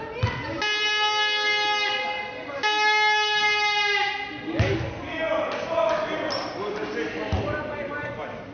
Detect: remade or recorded recorded